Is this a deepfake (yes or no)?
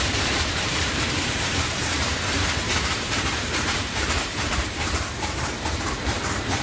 yes